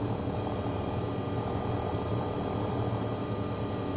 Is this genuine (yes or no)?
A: no